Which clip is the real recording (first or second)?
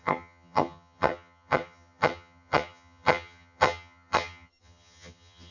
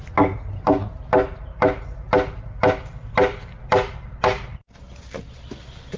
second